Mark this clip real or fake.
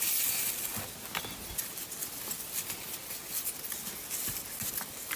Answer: real